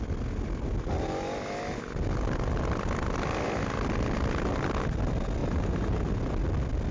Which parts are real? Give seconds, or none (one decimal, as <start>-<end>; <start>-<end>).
0.0-5.4; 6.1-6.9

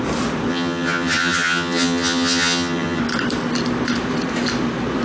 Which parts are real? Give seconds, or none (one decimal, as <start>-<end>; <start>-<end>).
0.0-0.5; 3.0-5.0

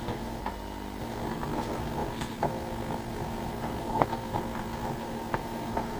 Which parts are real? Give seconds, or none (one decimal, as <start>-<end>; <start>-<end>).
0.4-1.0

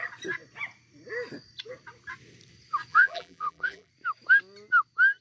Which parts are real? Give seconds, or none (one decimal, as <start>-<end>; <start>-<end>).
0.0-2.9; 3.9-5.2

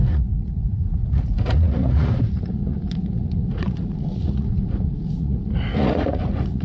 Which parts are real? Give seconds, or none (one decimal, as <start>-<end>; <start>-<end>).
none

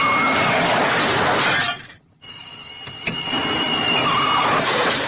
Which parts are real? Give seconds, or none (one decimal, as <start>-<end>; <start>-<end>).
0.0-2.3; 2.7-5.1

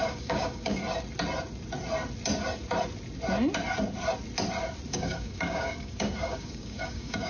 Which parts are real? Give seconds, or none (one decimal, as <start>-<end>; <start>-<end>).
0.8-4.9